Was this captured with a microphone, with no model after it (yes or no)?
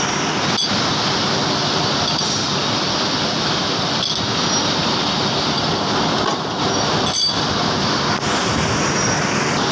yes